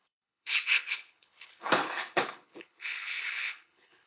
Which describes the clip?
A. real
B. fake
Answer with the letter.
B